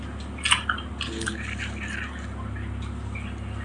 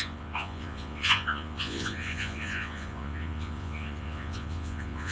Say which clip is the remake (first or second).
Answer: second